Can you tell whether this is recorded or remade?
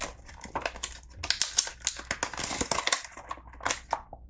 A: recorded